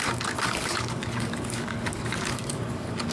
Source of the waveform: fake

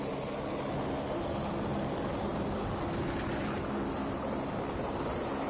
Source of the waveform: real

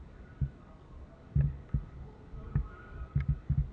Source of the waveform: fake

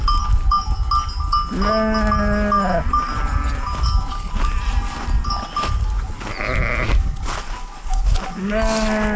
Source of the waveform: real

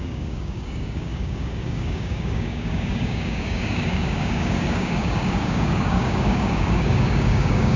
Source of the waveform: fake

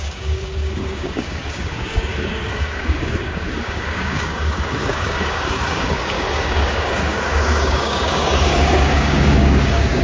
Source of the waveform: fake